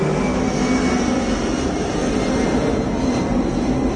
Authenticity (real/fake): real